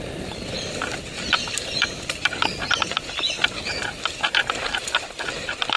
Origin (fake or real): fake